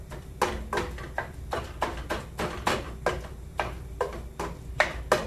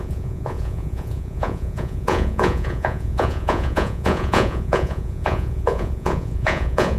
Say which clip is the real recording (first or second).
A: first